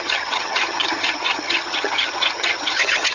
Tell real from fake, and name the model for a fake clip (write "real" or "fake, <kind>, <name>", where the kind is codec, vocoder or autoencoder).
fake, vocoder, HiFi-GAN